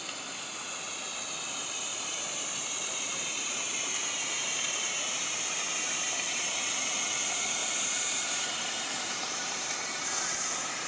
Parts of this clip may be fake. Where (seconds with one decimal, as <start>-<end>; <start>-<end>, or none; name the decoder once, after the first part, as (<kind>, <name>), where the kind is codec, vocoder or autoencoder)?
1.9-6.4 (vocoder, BigVGAN v2); 7.6-9.6